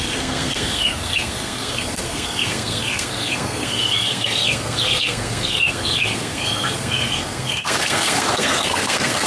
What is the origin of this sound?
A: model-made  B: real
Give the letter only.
A